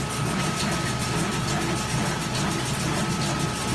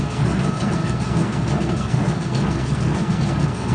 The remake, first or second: second